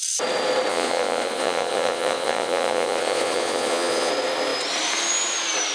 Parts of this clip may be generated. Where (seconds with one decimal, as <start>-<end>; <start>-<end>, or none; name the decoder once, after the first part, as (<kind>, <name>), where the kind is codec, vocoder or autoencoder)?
0.7-4.1 (vocoder, Vocos)